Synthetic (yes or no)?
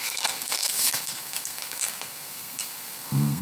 yes